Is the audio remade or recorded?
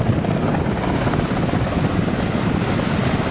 recorded